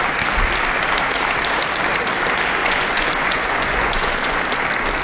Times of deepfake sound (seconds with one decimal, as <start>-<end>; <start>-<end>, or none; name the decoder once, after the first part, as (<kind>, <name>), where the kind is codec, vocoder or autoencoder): 2.6-4.4 (vocoder, Vocos)